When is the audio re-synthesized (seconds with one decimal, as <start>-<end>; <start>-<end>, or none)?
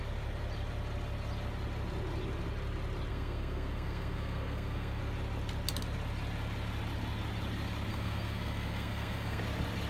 3.1-5.0; 7.9-9.4